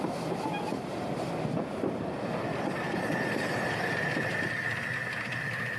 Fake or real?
real